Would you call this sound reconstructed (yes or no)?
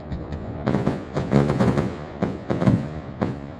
yes